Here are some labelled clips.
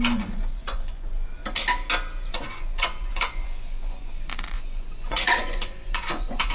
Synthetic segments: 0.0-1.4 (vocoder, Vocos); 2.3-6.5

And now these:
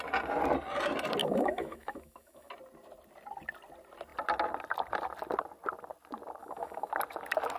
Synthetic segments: 1.2-2.5 (autoencoder, DAC-VAE); 6.4-6.9

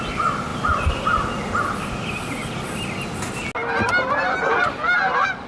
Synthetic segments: none

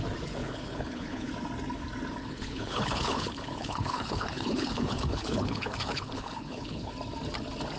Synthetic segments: 0.4-1.3 (codec, HILCodec); 2.2-6.9

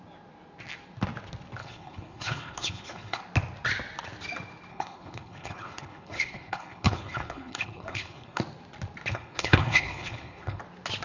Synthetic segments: 1.6-3.2 (codec, HILCodec); 4.7-8.4; 9.1-10.6

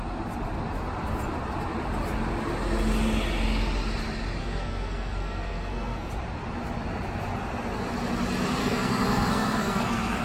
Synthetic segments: 4.4-6.1 (codec, SNAC); 8.6-10.2

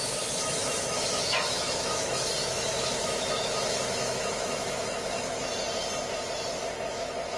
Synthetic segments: 0.0-5.5 (autoencoder, DAC-VAE); 6.9-7.4

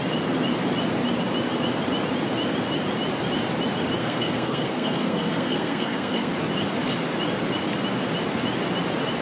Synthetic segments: 4.0-6.3 (codec, SNAC)